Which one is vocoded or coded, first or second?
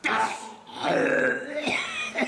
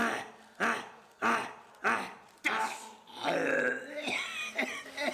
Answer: first